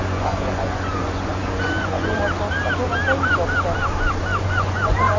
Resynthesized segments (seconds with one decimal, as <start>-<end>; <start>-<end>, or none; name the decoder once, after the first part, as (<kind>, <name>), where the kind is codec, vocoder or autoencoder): 0.0-2.2 (vocoder, Vocos); 4.4-5.2

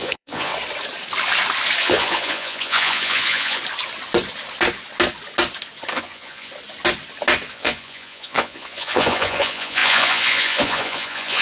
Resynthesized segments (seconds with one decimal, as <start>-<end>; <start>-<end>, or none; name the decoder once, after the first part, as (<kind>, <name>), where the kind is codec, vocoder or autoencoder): 0.0-0.5 (vocoder, Vocos); 1.8-3.6; 5.9-6.5; 7.5-11.4

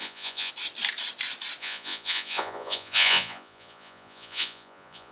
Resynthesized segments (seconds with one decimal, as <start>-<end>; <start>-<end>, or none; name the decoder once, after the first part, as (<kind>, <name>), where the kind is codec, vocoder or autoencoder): 0.0-0.5 (vocoder, Vocos); 1.6-5.1

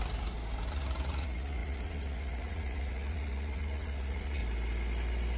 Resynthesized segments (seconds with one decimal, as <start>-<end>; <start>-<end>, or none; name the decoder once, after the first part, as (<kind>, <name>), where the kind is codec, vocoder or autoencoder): 0.7-4.4 (vocoder, Vocos)

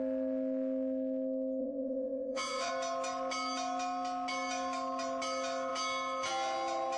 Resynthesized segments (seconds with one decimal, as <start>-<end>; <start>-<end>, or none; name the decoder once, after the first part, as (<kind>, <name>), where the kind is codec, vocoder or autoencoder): 1.6-2.7 (vocoder, Vocos)

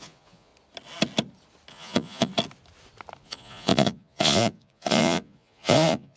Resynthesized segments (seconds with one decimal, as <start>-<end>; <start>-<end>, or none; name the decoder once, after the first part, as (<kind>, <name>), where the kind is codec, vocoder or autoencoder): 0.0-0.5 (vocoder, Vocos); 1.7-2.3; 3.2-6.2

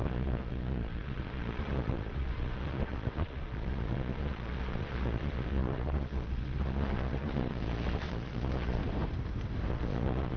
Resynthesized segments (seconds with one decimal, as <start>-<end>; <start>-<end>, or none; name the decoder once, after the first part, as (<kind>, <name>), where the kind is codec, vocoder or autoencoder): 0.0-8.8 (vocoder, Vocos); 9.7-10.4